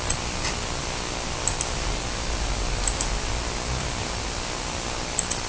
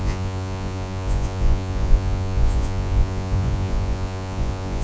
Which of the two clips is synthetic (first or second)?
second